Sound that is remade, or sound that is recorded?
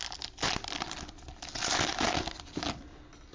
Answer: recorded